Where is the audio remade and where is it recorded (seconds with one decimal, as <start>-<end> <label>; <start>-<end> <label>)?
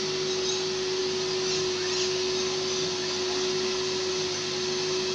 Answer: 0.0-5.1 recorded